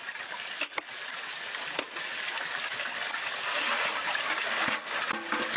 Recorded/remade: recorded